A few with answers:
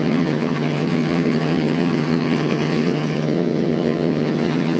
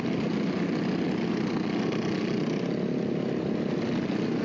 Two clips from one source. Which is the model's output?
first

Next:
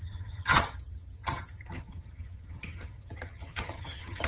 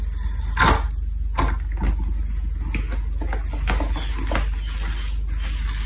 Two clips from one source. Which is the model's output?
first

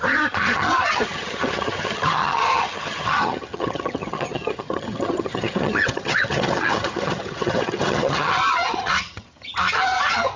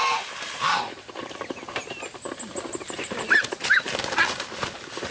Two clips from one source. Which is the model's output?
first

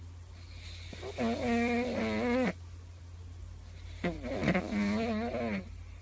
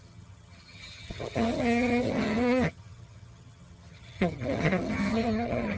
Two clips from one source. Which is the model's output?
second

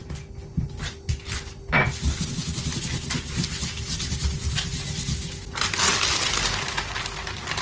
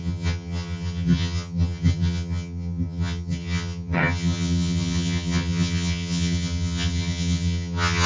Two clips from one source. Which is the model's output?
second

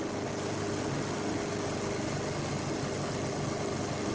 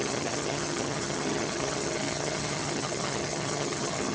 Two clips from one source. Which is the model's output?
second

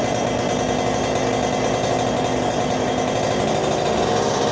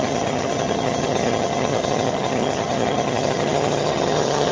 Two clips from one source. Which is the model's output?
second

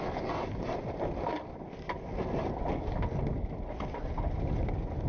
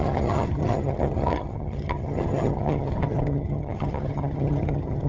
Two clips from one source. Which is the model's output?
second